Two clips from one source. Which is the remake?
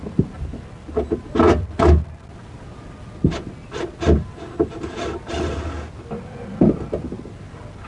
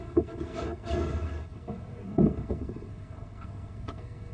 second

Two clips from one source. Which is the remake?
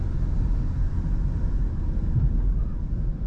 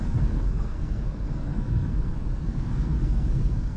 second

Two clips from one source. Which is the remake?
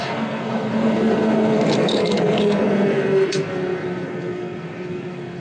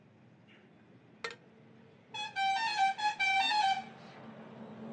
first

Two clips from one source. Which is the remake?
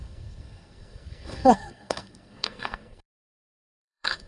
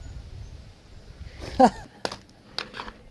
first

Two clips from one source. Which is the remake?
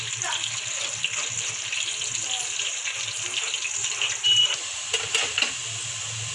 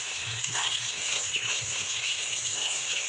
second